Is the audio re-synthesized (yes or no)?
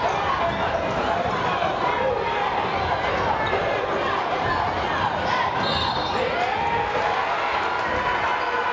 no